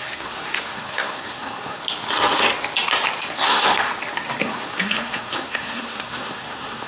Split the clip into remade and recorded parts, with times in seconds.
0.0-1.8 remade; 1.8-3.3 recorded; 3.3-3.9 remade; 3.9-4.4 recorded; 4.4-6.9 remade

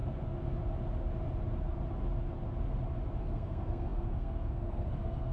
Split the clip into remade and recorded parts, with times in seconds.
0.0-3.2 recorded; 3.2-5.3 remade

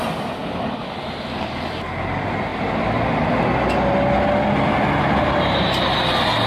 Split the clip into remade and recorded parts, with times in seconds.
0.0-6.5 recorded